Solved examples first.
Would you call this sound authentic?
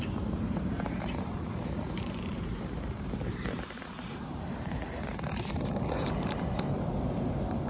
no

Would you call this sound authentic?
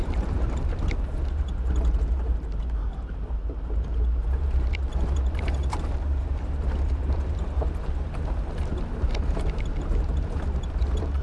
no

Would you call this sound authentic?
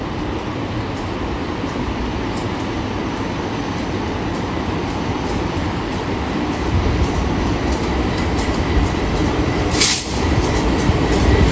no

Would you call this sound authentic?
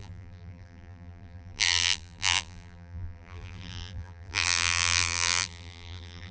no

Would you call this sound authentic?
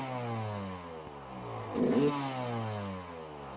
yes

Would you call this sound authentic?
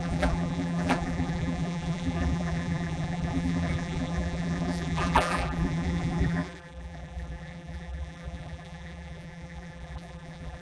no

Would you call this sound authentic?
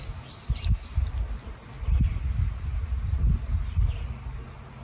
yes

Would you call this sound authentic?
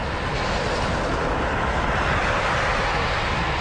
yes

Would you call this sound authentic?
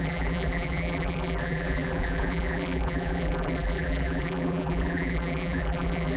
no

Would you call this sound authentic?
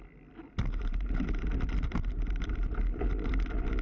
yes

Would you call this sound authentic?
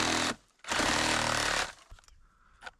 yes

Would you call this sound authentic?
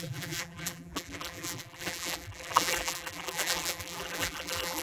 no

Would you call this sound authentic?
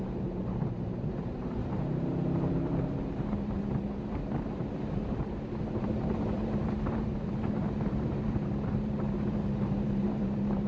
no